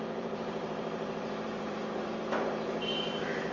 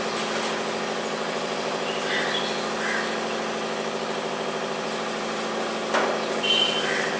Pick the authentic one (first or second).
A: second